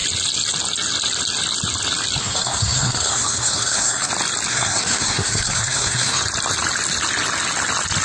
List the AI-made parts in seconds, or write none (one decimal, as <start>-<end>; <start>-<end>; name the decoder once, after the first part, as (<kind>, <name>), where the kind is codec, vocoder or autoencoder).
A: 2.2-4.1 (codec, SNAC); 4.5-6.2

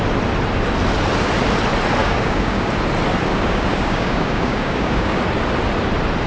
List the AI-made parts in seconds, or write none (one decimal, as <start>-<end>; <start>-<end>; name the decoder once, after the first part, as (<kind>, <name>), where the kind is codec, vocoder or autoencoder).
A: 2.0-2.7 (codec, DAC); 3.3-5.2

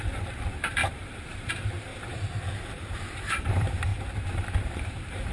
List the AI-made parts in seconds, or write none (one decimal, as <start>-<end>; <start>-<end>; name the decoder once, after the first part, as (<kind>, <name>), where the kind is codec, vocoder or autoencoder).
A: 0.0-1.9 (vocoder, BigVGAN v2); 2.5-5.3

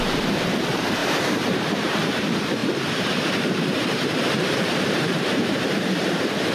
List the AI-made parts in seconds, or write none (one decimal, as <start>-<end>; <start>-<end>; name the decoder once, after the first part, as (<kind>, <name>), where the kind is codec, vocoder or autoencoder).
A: 0.0-6.5 (vocoder, BigVGAN v2)

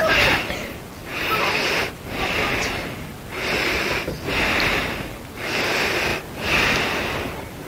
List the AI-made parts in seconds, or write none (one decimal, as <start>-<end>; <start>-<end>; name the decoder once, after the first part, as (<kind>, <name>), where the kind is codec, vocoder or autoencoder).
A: none

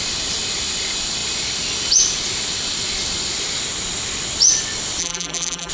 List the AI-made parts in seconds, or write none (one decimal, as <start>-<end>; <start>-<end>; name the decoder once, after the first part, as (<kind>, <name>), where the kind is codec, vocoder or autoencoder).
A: 5.0-5.7 (vocoder, BigVGAN v2)

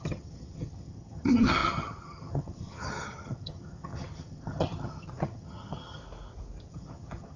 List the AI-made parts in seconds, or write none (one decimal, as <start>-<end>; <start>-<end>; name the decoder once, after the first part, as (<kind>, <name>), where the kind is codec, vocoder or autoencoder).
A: 0.0-6.0 (vocoder, HiFi-GAN); 6.7-7.4

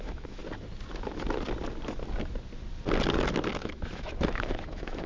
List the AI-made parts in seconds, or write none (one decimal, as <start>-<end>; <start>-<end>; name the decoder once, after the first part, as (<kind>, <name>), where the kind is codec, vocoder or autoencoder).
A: 0.0-0.4 (autoencoder, DAC-VAE); 3.5-5.1